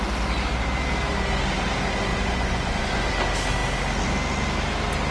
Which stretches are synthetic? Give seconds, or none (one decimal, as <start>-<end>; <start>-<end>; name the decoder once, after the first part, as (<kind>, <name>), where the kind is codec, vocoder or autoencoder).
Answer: 2.1-3.1 (vocoder, Vocos)